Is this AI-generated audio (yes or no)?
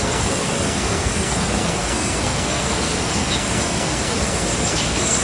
yes